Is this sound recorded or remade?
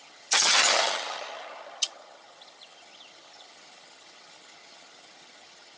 remade